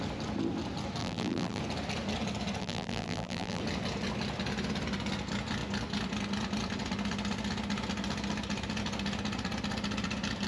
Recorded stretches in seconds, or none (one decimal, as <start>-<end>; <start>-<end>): 0.0-1.0; 1.6-2.6; 3.6-10.5